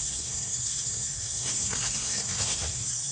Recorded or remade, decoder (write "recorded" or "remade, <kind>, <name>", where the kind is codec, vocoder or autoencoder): remade, codec, SNAC